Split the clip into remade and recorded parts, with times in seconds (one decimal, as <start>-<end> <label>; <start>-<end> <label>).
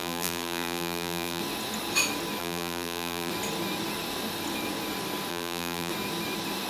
0.0-1.4 remade; 1.4-2.4 recorded; 2.4-3.3 remade; 3.3-5.3 recorded; 5.3-5.9 remade; 5.9-6.7 recorded